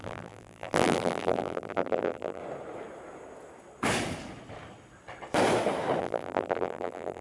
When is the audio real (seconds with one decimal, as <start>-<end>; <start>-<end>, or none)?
2.4-6.0